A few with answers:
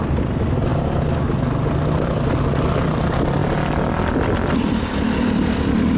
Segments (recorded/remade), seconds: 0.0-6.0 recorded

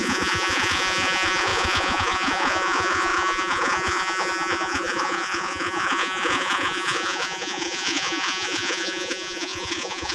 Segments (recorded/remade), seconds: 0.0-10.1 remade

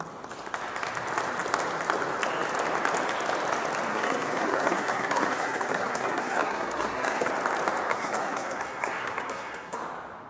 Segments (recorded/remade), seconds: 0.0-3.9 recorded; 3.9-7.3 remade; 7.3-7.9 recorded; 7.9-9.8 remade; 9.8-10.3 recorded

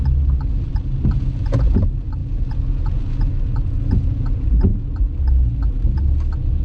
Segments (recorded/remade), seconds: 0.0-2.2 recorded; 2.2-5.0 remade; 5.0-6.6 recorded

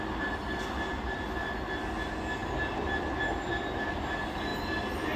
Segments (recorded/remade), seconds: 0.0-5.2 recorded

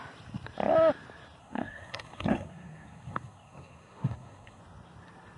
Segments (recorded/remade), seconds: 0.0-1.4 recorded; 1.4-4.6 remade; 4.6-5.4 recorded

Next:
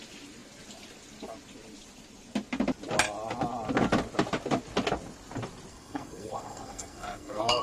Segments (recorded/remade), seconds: 0.0-5.7 recorded; 5.7-7.6 remade